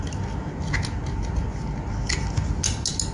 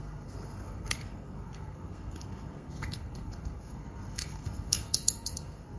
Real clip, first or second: first